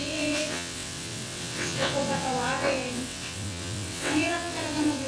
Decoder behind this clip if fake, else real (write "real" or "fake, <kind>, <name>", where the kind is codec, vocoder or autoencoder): fake, vocoder, WaveNeXt